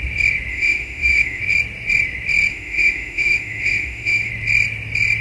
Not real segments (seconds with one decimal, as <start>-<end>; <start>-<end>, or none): 0.5-1.4; 2.5-4.3